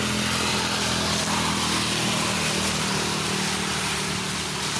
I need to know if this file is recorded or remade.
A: recorded